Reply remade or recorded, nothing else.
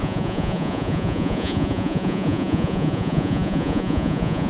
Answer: remade